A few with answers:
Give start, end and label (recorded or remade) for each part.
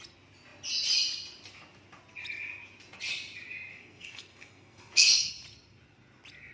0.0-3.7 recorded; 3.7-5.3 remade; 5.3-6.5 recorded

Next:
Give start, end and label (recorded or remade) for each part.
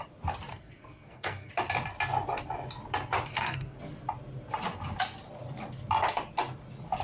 0.0-0.5 recorded; 0.5-1.5 remade; 1.5-3.3 recorded; 3.3-3.8 remade; 3.8-7.0 recorded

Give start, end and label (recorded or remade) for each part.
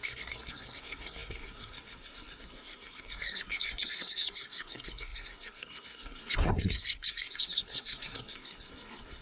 0.0-9.2 remade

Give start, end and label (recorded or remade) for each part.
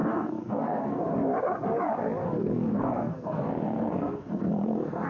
0.0-1.0 remade; 1.0-2.2 recorded; 2.2-5.1 remade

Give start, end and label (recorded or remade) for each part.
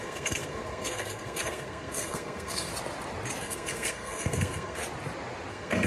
0.0-2.7 remade; 2.7-3.4 recorded; 3.4-4.8 remade; 4.8-5.5 recorded; 5.5-5.9 remade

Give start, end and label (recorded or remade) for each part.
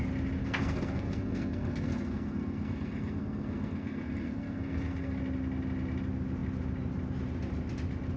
0.0-0.4 recorded; 0.4-5.2 remade; 5.2-8.2 recorded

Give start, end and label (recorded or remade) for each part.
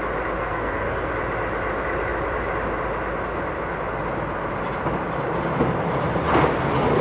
0.0-0.4 recorded; 0.4-1.1 remade; 1.1-7.0 recorded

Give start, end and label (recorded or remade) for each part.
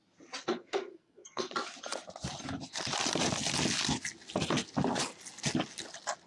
0.0-0.4 recorded; 0.4-1.5 remade; 1.5-6.3 recorded